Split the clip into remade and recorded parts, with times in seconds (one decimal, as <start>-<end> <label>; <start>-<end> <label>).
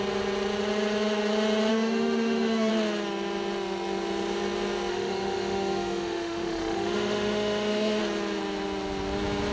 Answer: 0.0-1.7 recorded; 1.7-2.7 remade; 2.7-4.9 recorded; 4.9-8.0 remade; 8.0-9.5 recorded